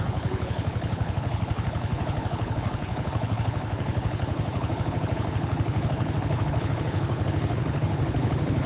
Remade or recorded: remade